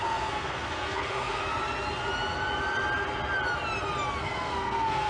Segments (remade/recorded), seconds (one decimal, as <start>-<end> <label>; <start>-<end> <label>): 0.0-1.4 remade; 1.4-4.2 recorded; 4.2-5.1 remade